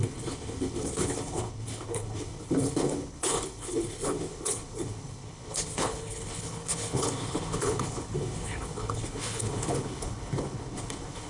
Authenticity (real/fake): fake